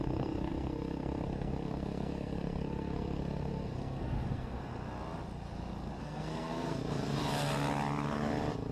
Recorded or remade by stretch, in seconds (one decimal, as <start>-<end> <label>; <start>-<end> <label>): 0.0-4.7 remade; 4.7-6.0 recorded; 6.0-6.8 remade; 6.8-8.7 recorded